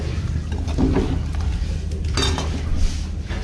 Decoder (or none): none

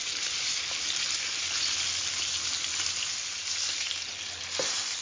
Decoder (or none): none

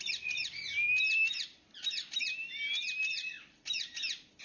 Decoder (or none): none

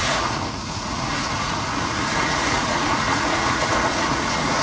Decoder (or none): vocoder, Vocos